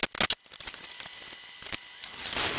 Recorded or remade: recorded